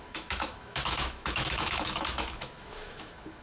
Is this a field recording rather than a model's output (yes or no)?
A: no